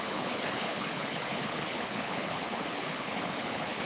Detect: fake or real fake